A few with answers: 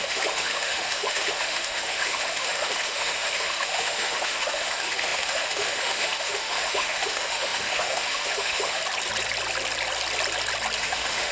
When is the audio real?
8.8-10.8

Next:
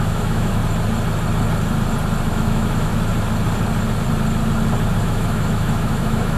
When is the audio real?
0.6-2.3; 2.9-5.0

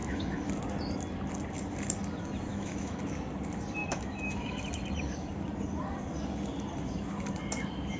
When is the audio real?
0.5-2.5; 3.0-3.8; 4.6-8.0

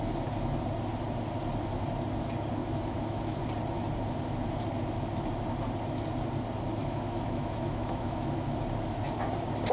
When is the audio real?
0.0-2.6; 3.4-6.8; 8.6-9.7

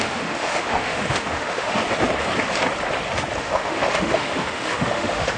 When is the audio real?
1.8-3.4

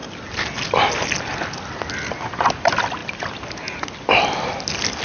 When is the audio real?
0.0-5.0

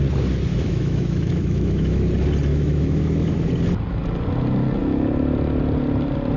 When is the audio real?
0.0-0.5; 2.1-2.5; 3.5-6.4

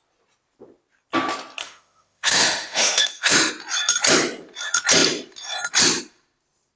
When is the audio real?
0.0-1.6; 3.5-6.8